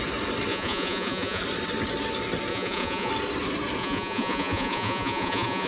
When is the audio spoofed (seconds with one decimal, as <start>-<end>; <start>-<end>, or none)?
0.5-1.4; 2.5-3.1; 3.8-5.7